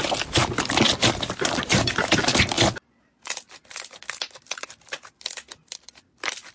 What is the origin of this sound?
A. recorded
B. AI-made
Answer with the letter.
A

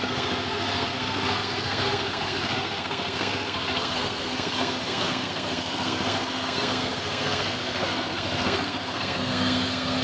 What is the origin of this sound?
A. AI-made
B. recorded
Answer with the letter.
A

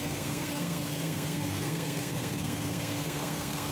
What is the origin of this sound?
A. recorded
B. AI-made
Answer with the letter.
B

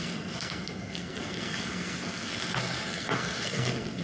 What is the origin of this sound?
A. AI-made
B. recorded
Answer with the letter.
A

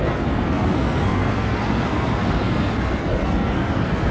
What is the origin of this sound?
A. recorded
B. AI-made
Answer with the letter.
B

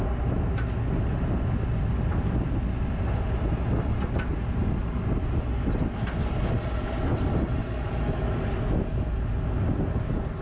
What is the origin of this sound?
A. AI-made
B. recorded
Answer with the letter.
B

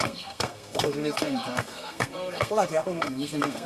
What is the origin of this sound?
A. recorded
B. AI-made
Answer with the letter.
B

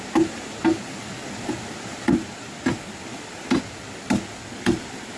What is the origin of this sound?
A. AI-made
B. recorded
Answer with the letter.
B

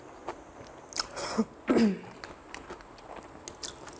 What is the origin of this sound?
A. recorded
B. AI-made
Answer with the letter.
A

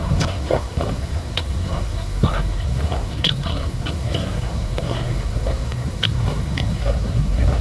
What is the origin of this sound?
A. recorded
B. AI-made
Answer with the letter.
B